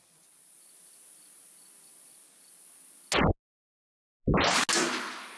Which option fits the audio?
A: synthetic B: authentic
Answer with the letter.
B